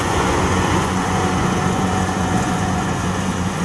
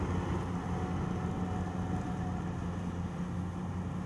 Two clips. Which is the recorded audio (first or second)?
second